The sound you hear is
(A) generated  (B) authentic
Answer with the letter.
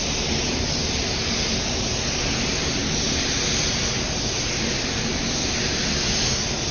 B